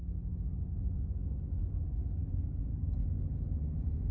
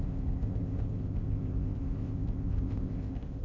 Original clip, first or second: first